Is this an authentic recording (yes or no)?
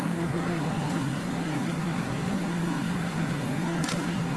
no